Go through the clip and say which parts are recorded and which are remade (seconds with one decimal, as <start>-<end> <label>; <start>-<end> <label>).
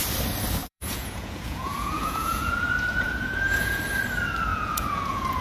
0.0-0.6 recorded; 0.6-3.8 remade; 3.8-4.5 recorded; 4.5-5.4 remade